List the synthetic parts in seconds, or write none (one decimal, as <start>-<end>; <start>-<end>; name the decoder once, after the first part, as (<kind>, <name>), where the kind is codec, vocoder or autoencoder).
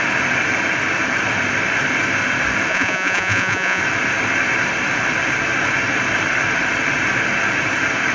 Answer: 2.7-3.8 (vocoder, Vocos)